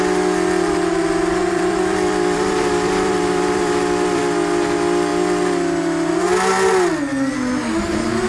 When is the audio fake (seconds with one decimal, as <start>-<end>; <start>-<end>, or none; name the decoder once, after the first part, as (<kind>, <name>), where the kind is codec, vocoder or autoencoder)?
1.4-4.2 (vocoder, BigVGAN v2)

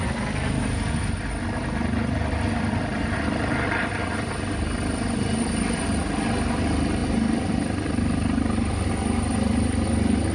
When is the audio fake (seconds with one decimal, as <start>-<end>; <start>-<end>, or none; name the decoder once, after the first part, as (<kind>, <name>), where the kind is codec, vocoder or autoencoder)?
none

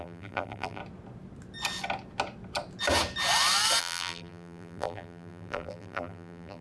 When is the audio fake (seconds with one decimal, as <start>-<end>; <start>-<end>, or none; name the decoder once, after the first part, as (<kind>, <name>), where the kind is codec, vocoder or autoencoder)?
0.0-0.8 (vocoder, BigVGAN v2); 3.8-6.6